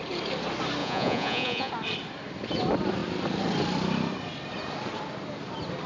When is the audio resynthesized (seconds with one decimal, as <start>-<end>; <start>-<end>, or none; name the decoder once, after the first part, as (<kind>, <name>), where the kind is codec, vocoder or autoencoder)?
0.8-1.7 (vocoder, Vocos)